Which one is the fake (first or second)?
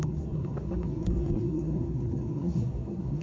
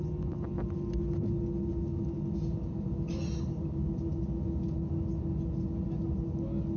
first